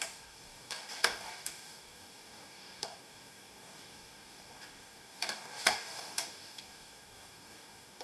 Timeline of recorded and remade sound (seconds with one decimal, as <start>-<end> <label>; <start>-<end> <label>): 0.0-8.0 remade